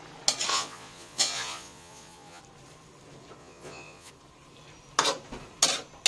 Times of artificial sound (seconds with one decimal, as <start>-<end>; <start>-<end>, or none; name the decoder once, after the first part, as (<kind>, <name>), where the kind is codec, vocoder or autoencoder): 0.5-2.4 (vocoder, Vocos); 3.4-4.1